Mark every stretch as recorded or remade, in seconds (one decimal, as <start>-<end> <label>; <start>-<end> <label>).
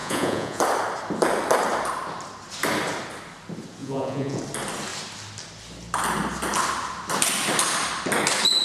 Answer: 0.0-0.6 remade; 0.6-3.8 recorded; 3.8-4.4 remade; 4.4-8.6 recorded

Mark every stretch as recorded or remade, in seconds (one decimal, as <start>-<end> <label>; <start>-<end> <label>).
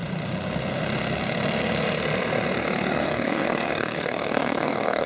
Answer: 0.0-3.1 recorded; 3.1-5.1 remade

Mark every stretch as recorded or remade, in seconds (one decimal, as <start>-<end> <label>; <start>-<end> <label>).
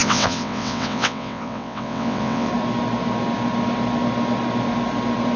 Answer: 0.0-2.5 remade; 2.5-5.4 recorded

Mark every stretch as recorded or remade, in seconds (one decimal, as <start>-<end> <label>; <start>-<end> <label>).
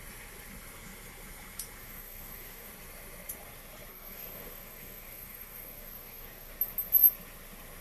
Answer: 0.0-1.8 recorded; 1.8-2.7 remade; 2.7-3.9 recorded; 3.9-6.5 remade; 6.5-7.8 recorded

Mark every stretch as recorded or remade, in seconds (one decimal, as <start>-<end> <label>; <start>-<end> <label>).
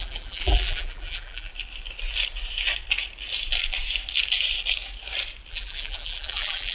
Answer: 0.0-1.5 remade; 1.5-5.5 recorded; 5.5-6.7 remade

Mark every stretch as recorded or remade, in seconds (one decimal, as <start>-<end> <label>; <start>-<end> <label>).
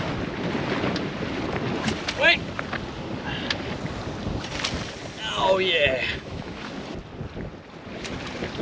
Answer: 0.0-6.1 recorded; 6.1-6.7 remade; 6.7-8.6 recorded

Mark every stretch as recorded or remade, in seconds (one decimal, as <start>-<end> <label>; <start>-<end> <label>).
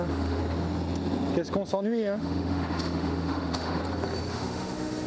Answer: 0.0-0.4 remade; 0.4-1.7 recorded; 1.7-3.8 remade; 3.8-4.3 recorded; 4.3-5.1 remade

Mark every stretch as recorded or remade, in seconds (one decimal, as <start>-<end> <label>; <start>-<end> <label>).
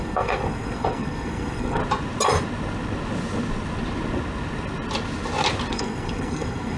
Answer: 0.0-1.8 remade; 1.8-5.7 recorded; 5.7-6.8 remade